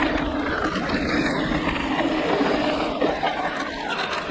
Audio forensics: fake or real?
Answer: real